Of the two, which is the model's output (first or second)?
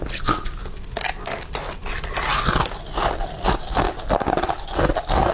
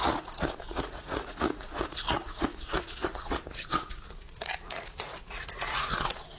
second